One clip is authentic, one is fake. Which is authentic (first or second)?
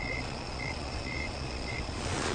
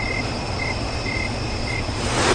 second